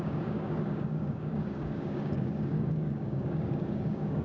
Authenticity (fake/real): fake